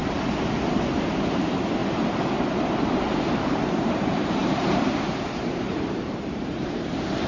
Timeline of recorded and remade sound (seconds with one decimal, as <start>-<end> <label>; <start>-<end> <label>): 0.0-1.8 remade; 1.8-2.4 recorded; 2.4-7.3 remade